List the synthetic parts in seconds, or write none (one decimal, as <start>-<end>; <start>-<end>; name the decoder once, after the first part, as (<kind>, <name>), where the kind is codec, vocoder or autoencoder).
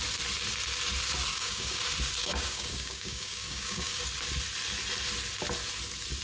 1.3-1.8 (codec, DAC); 2.2-4.0